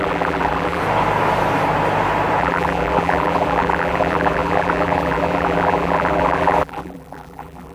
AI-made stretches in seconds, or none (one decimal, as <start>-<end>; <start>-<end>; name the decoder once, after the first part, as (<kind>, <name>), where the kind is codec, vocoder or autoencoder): 0.0-0.8 (vocoder, BigVGAN v2); 2.4-7.7